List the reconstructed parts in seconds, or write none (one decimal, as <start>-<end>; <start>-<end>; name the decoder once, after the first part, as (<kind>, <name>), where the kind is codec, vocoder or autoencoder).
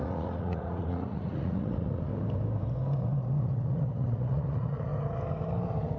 0.0-2.1 (vocoder, Vocos); 3.4-4.9